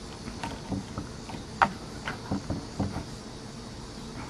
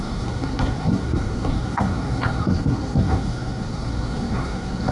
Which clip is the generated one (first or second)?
second